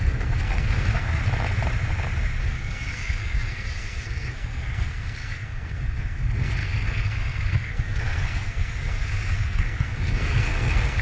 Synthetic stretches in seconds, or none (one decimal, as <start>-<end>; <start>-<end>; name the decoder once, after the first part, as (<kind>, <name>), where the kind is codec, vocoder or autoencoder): 0.0-1.2 (codec, SNAC); 2.4-11.0

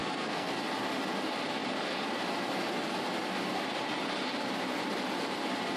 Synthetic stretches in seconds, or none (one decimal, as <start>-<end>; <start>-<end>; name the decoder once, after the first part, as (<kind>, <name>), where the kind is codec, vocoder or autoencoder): 0.0-0.6 (codec, SNAC)

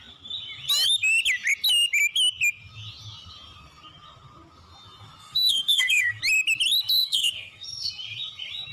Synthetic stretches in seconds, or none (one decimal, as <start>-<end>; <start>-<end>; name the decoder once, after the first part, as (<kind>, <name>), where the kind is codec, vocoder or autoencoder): 5.2-6.2 (codec, SNAC); 7.0-7.9

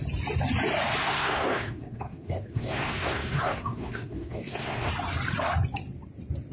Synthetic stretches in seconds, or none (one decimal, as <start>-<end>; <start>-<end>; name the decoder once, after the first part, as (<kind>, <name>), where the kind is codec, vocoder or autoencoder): 1.0-4.9 (codec, SNAC)

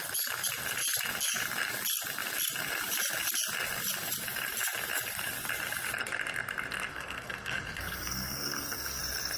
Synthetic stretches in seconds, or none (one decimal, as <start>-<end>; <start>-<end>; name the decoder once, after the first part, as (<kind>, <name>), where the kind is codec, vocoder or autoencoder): 6.9-9.0 (codec, SNAC)

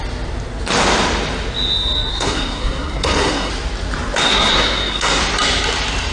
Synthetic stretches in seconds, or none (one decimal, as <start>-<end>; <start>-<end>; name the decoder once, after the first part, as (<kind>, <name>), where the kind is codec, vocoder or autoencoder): 2.1-3.5 (codec, SNAC); 4.3-5.2

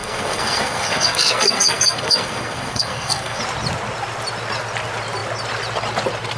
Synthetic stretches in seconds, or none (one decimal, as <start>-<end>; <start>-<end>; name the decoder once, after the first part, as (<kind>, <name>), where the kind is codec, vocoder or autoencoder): 0.0-3.4 (codec, SNAC)